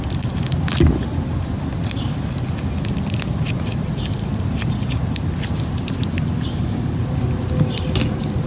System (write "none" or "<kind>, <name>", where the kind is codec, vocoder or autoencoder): none